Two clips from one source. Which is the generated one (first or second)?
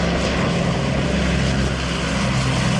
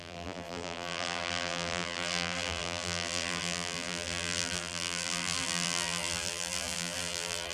second